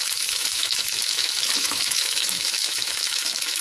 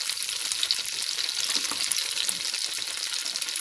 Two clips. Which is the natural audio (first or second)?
second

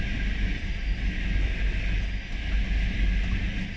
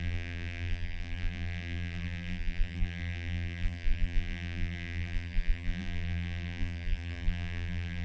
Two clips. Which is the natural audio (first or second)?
first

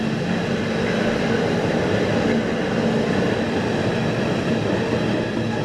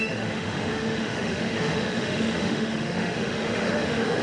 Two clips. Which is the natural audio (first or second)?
first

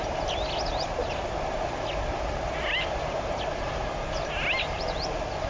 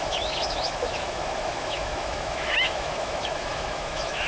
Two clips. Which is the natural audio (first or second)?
first